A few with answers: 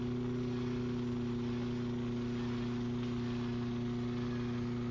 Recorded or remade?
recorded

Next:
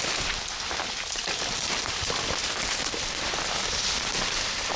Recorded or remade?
recorded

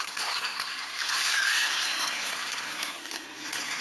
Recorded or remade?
remade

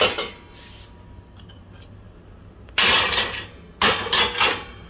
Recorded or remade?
recorded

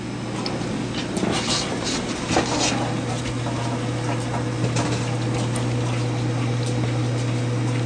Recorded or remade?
recorded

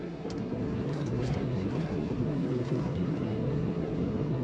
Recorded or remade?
remade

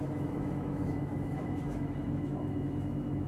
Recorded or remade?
remade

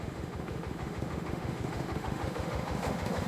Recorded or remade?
remade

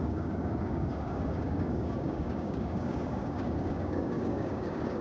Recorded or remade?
remade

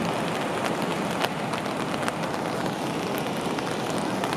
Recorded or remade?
recorded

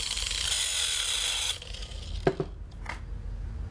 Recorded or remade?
recorded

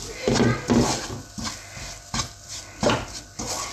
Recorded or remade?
recorded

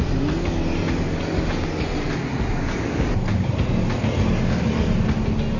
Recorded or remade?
recorded